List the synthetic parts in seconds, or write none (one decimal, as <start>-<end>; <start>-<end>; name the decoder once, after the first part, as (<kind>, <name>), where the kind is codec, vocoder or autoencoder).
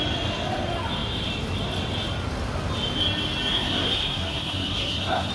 3.5-5.3 (codec, SNAC)